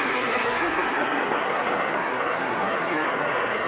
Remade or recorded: remade